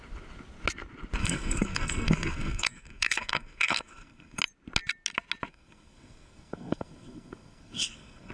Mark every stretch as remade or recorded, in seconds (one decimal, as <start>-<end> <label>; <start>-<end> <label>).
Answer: 0.0-1.2 recorded; 1.2-4.4 remade; 4.4-5.5 recorded; 5.5-8.3 remade

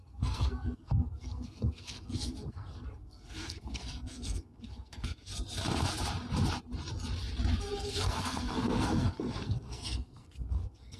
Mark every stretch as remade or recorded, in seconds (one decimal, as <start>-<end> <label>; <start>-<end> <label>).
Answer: 0.0-5.3 remade; 5.3-7.6 recorded; 7.6-11.0 remade

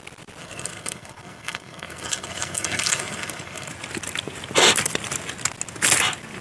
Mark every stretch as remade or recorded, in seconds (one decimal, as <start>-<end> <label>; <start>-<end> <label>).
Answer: 0.0-0.4 recorded; 0.4-3.7 remade; 3.7-6.4 recorded

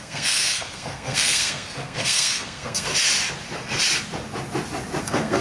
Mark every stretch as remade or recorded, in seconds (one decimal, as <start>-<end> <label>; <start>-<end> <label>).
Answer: 0.0-2.9 remade; 2.9-5.0 recorded; 5.0-5.4 remade

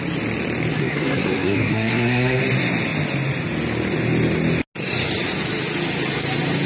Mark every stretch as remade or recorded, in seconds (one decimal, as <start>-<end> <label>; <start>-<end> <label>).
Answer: 0.0-0.7 recorded; 0.7-2.4 remade; 2.4-6.7 recorded

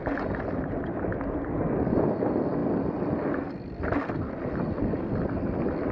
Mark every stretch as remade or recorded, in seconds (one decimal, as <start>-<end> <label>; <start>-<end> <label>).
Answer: 0.0-5.9 recorded

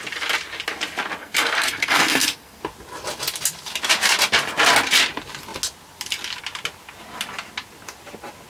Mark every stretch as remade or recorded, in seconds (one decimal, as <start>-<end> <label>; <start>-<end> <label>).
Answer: 0.0-1.2 recorded; 1.2-2.6 remade; 2.6-8.5 recorded

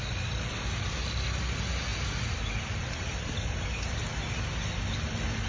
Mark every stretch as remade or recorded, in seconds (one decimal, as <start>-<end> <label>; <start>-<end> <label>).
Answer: 0.0-5.5 recorded